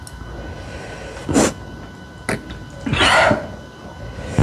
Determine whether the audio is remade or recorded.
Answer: recorded